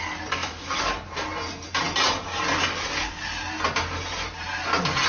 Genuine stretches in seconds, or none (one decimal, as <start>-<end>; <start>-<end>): 0.0-0.4; 0.9-5.1